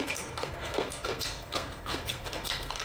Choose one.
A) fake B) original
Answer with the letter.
A